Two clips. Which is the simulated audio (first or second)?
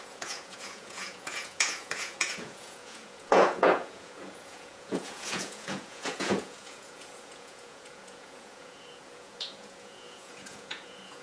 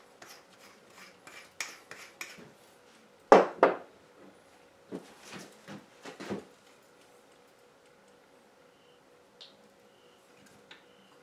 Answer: first